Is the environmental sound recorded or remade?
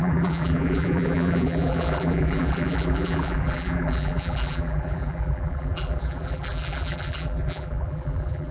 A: remade